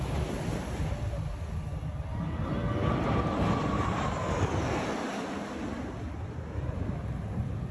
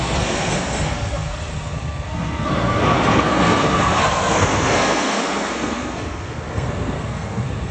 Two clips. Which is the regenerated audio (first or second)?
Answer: second